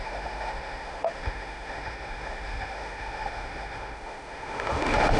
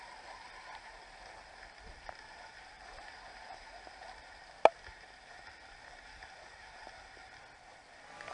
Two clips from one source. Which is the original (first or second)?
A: second